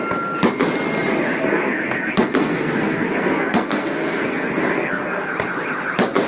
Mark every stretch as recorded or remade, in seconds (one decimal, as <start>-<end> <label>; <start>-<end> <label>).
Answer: 0.0-1.4 recorded; 1.4-5.2 remade; 5.2-6.3 recorded